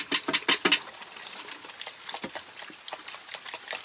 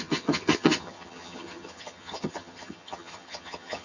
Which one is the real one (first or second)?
first